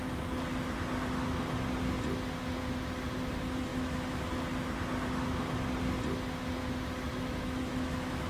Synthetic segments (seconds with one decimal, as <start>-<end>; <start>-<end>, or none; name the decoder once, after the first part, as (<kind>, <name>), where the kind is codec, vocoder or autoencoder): 3.7-4.3 (autoencoder, DAC-VAE); 7.1-8.3